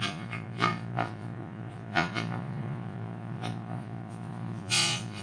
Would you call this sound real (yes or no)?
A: no